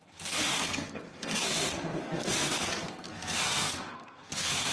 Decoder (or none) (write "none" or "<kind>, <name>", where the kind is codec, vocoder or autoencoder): codec, SNAC